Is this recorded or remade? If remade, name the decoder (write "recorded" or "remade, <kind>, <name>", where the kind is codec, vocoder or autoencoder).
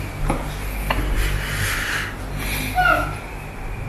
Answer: recorded